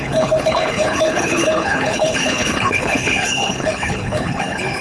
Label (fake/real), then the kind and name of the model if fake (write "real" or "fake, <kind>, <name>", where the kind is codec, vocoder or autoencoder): fake, codec, HILCodec